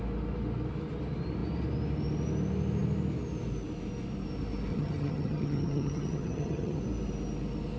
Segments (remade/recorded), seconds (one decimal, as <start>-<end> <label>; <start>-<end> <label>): 0.0-4.7 recorded; 4.7-6.8 remade; 6.8-7.8 recorded